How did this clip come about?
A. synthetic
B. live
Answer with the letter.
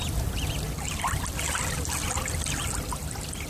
B